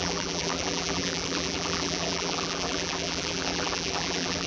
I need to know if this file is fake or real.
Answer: fake